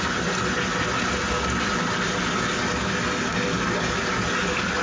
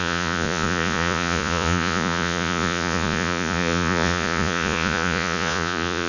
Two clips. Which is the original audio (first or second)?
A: first